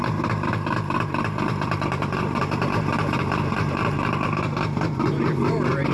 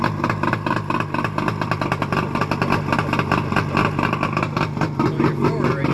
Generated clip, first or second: first